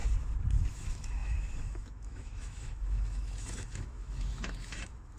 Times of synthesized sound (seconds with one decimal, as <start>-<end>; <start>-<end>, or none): 0.7-5.2